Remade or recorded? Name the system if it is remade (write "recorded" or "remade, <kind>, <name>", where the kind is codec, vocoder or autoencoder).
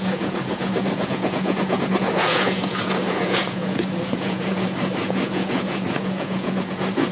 remade, vocoder, Vocos